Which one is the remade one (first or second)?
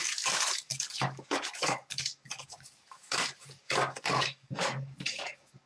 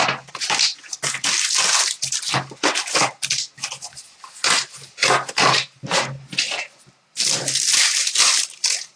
first